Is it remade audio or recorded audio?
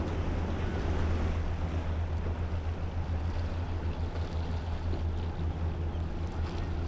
recorded